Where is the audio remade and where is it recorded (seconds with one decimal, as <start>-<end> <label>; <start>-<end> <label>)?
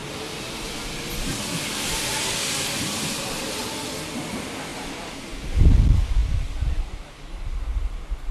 0.0-4.2 remade; 4.2-4.7 recorded; 4.7-5.3 remade; 5.3-6.2 recorded; 6.2-7.1 remade; 7.1-8.3 recorded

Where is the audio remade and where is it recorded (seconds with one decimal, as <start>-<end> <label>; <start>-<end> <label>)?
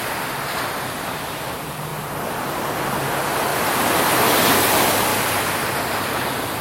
0.0-6.6 recorded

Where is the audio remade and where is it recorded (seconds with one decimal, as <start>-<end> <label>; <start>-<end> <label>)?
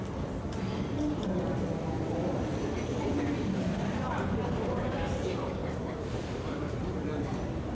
0.0-5.6 recorded; 5.6-6.9 remade; 6.9-7.7 recorded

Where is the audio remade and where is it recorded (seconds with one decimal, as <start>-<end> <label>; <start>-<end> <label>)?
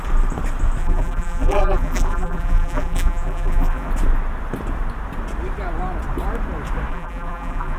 0.0-0.8 recorded; 0.8-3.9 remade; 3.9-6.9 recorded; 6.9-7.8 remade